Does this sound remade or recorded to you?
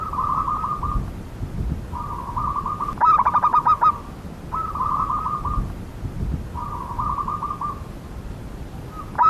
recorded